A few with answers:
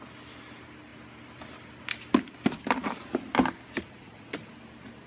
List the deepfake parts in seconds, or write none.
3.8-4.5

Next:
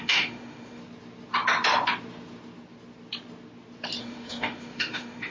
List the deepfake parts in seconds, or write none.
0.0-0.8; 4.0-5.3

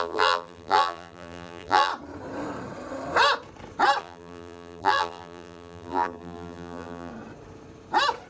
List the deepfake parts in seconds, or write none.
0.0-1.9; 4.0-7.1